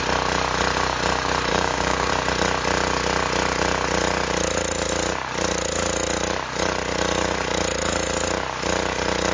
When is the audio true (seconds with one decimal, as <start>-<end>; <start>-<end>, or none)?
0.0-1.5; 2.1-9.3